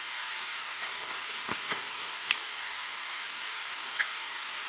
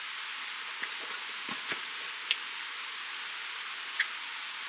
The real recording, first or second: second